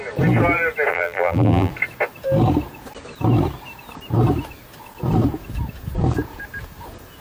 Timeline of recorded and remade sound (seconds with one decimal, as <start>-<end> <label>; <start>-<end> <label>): 0.0-0.9 recorded; 0.9-1.7 remade; 1.7-7.2 recorded